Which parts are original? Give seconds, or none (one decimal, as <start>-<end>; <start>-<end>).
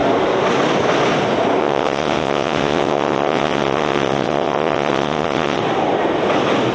0.0-1.6; 5.6-6.7